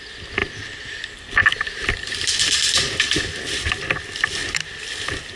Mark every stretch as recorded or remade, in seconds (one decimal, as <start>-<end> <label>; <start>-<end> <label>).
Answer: 0.0-5.4 recorded